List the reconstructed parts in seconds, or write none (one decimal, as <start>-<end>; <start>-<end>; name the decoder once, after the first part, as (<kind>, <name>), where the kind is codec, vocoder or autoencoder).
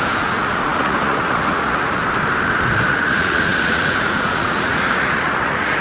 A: 0.0-2.0 (vocoder, Vocos); 2.9-5.8